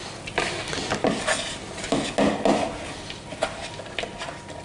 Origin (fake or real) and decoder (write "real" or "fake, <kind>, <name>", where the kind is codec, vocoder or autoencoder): real